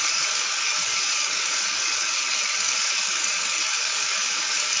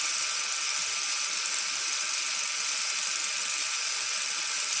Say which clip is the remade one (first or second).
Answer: first